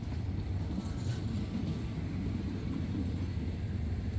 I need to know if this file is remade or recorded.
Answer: recorded